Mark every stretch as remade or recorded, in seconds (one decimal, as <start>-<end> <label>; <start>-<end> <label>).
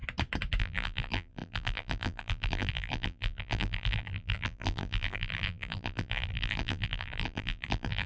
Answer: 0.0-0.6 recorded; 0.6-8.1 remade